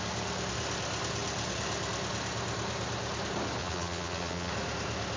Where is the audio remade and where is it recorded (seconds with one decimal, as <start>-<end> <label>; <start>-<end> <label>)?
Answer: 0.0-3.6 recorded; 3.6-4.5 remade; 4.5-5.2 recorded